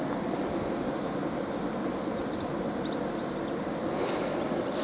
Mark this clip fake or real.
real